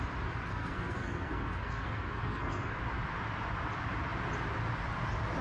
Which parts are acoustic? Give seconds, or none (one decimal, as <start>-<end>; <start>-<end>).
0.0-0.5; 2.8-5.4